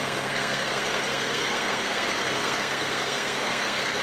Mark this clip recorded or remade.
remade